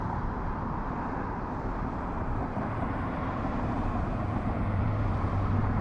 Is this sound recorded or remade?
remade